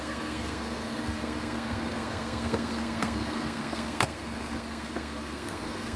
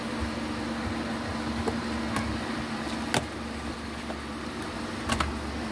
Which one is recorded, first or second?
second